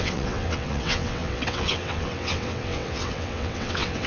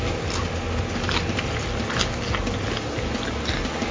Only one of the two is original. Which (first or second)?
second